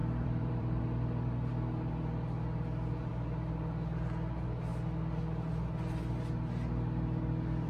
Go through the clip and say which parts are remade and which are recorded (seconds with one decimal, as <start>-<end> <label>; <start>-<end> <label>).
0.0-0.8 remade; 0.8-7.7 recorded